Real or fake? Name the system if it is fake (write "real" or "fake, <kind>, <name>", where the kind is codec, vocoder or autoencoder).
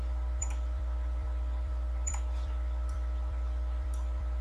fake, vocoder, BigVGAN v2